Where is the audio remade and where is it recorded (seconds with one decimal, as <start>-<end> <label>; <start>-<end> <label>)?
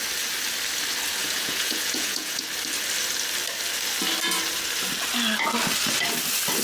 0.0-1.2 recorded; 1.2-2.4 remade; 2.4-6.6 recorded